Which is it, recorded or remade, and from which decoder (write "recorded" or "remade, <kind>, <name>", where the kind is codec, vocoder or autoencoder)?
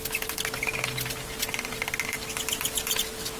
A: recorded